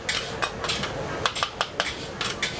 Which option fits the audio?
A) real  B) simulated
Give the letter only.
A